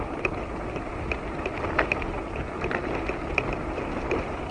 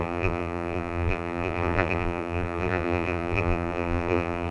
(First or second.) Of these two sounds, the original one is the first